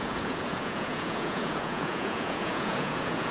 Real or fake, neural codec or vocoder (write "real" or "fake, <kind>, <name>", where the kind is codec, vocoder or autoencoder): fake, vocoder, Vocos